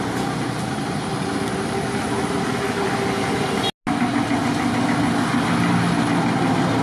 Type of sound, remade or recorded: recorded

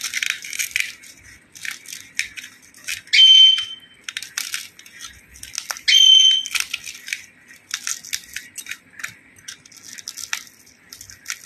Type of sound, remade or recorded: recorded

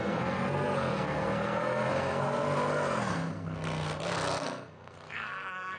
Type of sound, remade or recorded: remade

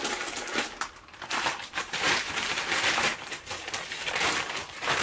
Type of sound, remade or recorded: remade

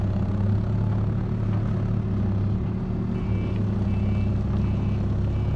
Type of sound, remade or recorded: recorded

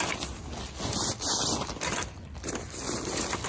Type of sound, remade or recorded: recorded